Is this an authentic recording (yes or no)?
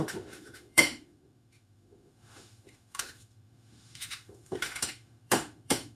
no